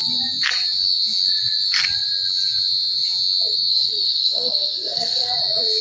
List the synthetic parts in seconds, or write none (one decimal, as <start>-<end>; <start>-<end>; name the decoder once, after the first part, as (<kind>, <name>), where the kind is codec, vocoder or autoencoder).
3.7-5.3 (codec, SNAC)